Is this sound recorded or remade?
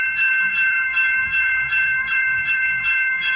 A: remade